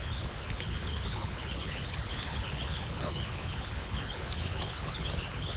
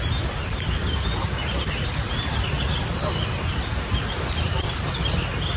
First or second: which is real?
second